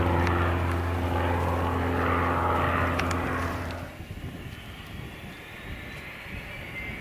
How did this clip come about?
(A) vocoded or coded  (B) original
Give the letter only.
B